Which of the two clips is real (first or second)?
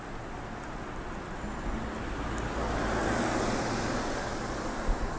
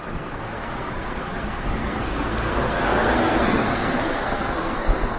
first